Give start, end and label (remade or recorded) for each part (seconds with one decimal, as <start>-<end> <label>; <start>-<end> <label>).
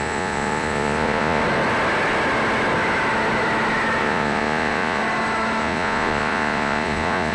0.0-1.4 remade; 1.4-4.0 recorded; 4.0-5.0 remade; 5.0-5.6 recorded; 5.6-7.3 remade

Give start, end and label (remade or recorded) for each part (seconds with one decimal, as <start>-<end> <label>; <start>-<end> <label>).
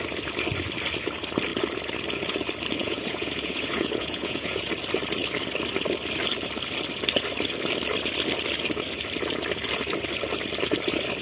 0.0-2.8 recorded; 2.8-4.7 remade; 4.7-11.2 recorded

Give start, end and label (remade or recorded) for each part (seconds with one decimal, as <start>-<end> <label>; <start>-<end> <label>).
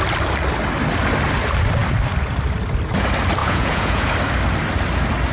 0.0-3.4 recorded; 3.4-4.1 remade; 4.1-5.3 recorded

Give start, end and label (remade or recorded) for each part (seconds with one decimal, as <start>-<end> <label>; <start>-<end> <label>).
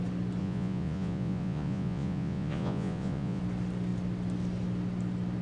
0.0-0.4 recorded; 0.4-3.4 remade; 3.4-5.4 recorded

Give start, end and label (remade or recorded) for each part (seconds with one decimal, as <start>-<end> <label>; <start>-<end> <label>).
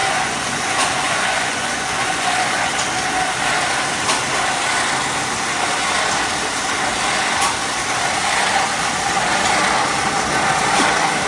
0.0-2.7 remade; 2.7-11.3 recorded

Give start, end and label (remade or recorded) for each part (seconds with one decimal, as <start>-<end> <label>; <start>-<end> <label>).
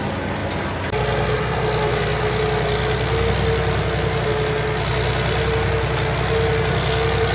0.0-7.3 recorded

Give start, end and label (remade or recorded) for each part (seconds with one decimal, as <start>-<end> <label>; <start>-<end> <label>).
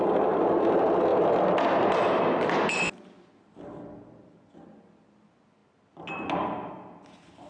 0.0-7.5 recorded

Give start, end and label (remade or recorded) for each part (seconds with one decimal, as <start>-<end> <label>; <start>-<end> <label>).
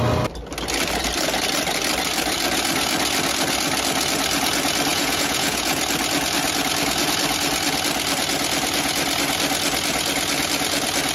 0.0-4.9 recorded; 4.9-5.8 remade; 5.8-11.1 recorded